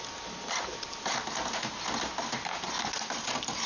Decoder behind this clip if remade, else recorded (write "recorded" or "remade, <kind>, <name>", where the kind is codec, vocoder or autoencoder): recorded